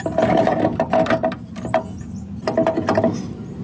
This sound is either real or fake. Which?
real